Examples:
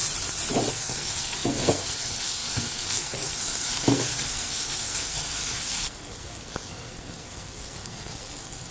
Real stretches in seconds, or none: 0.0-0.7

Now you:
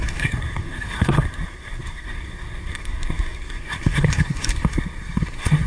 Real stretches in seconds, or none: none

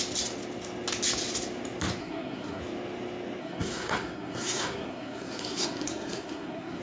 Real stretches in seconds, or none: 0.0-2.0; 2.6-3.4

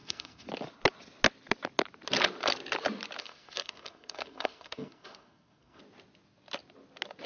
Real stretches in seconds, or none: 0.5-3.2; 5.8-7.3